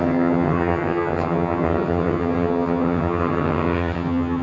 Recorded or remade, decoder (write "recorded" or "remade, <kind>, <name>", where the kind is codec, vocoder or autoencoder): remade, vocoder, HiFi-GAN